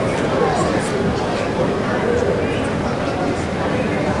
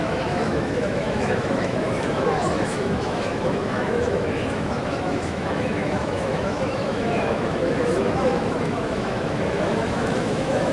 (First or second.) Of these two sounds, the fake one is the second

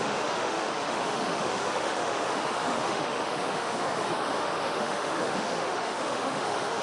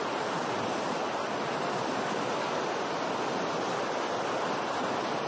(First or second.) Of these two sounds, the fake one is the first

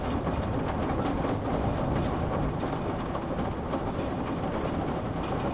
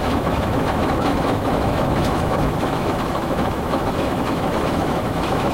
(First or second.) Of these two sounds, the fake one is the second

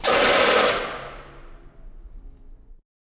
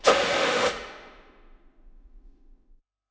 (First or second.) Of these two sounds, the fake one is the second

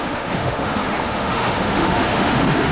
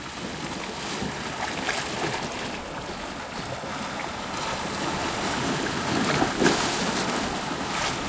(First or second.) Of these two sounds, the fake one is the first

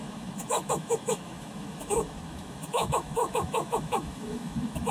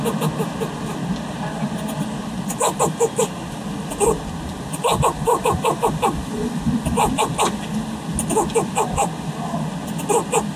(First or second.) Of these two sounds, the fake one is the first